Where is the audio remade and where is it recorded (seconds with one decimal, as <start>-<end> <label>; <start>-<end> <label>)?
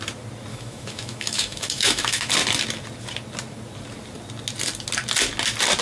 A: 0.0-0.5 recorded; 0.5-2.3 remade; 2.3-5.8 recorded